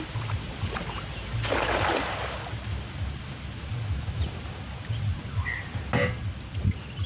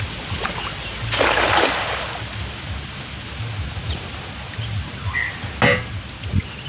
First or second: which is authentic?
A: second